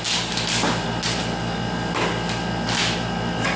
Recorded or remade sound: recorded